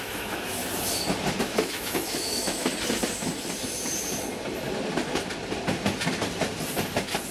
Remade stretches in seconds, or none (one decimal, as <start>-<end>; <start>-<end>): 0.0-0.6; 1.4-2.7